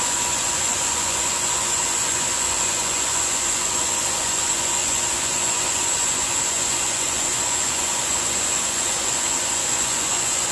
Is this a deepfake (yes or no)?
yes